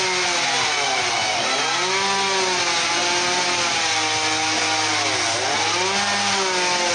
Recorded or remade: recorded